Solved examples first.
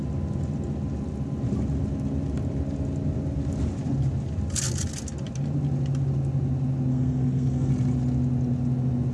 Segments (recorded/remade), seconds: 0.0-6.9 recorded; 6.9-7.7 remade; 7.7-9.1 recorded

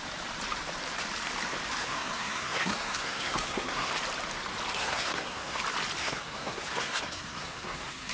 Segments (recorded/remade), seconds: 0.0-1.8 recorded; 1.8-3.9 remade; 3.9-4.7 recorded; 4.7-5.6 remade; 5.6-6.0 recorded; 6.0-8.1 remade

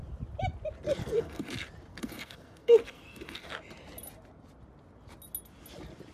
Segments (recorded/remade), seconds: 0.0-1.0 recorded; 1.0-1.5 remade; 1.5-1.9 recorded; 1.9-3.5 remade; 3.5-6.1 recorded

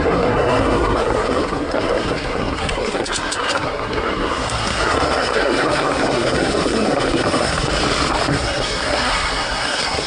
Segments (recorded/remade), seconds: 0.0-7.7 remade; 7.7-8.3 recorded; 8.3-10.1 remade